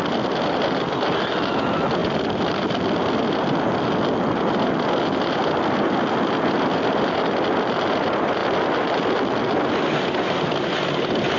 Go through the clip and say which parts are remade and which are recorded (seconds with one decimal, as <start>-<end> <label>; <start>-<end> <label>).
0.0-11.4 recorded